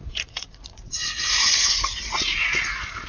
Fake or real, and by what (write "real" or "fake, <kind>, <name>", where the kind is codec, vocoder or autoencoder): fake, vocoder, Vocos